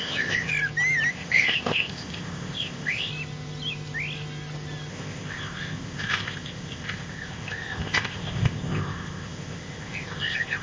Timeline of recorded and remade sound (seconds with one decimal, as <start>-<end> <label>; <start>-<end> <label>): 0.0-0.5 remade; 0.5-1.1 recorded; 1.1-3.1 remade; 3.1-4.9 recorded; 4.9-10.6 remade